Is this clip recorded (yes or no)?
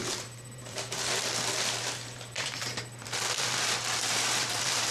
no